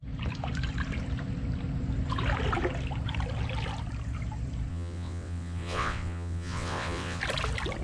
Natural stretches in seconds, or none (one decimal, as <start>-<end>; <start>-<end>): 0.0-4.7; 7.2-7.8